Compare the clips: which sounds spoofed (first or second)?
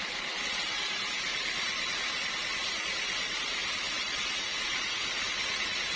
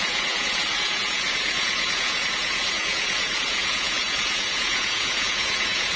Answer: second